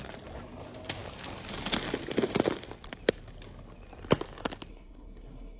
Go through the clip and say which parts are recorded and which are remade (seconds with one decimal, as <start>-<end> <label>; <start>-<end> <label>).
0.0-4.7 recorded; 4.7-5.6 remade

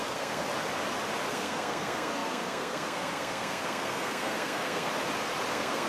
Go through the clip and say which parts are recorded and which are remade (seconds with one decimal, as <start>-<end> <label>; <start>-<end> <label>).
0.0-0.4 remade; 0.4-1.3 recorded; 1.3-4.9 remade; 4.9-5.5 recorded; 5.5-5.9 remade

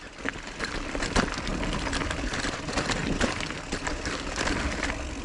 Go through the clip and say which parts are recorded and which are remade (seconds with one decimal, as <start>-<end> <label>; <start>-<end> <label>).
0.0-5.2 recorded

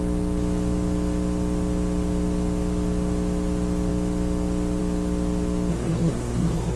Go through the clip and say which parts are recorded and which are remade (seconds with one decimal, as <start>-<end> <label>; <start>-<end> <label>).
0.0-5.7 recorded; 5.7-6.8 remade